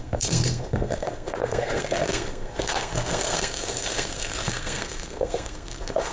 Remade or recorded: remade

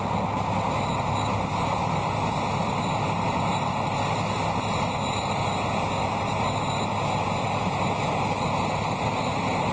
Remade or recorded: recorded